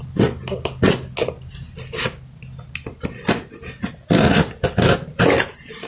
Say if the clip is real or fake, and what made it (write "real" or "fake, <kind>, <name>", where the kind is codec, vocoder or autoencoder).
real